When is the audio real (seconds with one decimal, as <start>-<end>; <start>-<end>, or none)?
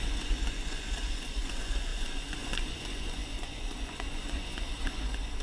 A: none